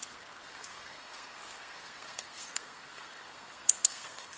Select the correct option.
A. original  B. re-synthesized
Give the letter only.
B